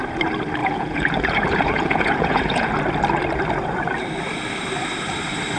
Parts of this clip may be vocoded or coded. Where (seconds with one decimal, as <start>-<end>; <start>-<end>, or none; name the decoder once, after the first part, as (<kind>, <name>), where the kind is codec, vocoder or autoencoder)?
0.6-2.7 (vocoder, Vocos)